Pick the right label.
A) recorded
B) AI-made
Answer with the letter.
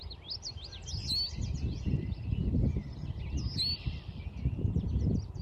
A